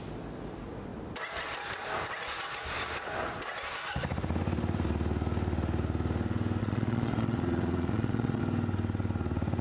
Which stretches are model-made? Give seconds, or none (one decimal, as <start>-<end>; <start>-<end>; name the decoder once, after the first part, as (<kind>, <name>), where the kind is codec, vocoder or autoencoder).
6.6-8.4 (vocoder, Vocos)